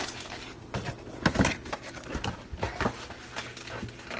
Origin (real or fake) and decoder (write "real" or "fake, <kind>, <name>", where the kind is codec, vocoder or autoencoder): real